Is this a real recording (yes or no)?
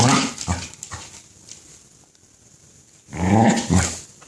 no